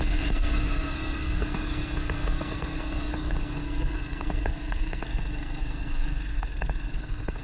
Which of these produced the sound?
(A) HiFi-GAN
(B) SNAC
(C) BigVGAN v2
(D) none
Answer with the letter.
B